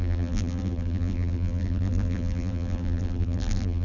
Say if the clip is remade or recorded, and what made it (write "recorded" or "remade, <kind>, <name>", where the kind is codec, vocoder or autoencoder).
remade, vocoder, BigVGAN v2